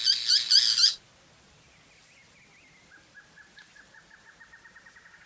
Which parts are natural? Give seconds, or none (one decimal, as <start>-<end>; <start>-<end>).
0.0-5.3